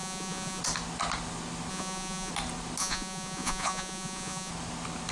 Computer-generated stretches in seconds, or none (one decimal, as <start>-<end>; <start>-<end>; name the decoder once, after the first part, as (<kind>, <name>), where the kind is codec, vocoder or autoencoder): 0.0-0.6 (vocoder, Vocos); 1.7-2.3; 2.8-4.5